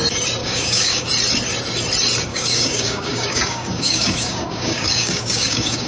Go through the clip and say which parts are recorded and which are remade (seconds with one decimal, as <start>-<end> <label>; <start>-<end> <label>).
0.0-0.4 recorded; 0.4-1.1 remade; 1.1-2.3 recorded; 2.3-5.9 remade